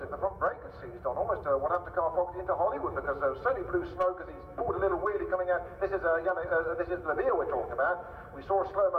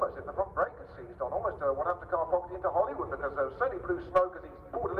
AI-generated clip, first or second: first